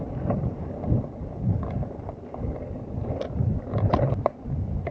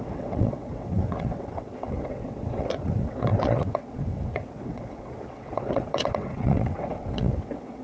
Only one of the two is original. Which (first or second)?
first